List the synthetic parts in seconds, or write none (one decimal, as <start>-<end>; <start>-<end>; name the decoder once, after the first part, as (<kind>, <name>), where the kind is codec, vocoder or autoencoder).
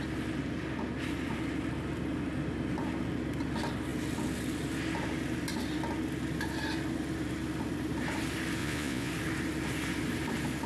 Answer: 8.6-9.1 (vocoder, Vocos)